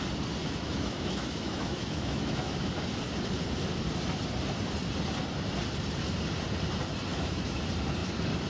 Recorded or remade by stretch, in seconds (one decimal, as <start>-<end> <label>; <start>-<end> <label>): 0.0-0.4 recorded; 0.4-2.7 remade; 2.7-7.1 recorded; 7.1-7.6 remade; 7.6-8.5 recorded